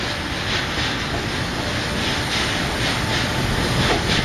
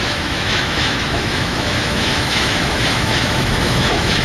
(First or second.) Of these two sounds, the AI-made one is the second